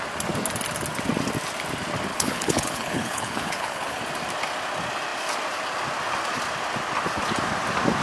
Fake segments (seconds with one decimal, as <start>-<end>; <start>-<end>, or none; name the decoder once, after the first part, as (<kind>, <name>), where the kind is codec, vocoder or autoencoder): 2.1-4.0 (codec, HILCodec)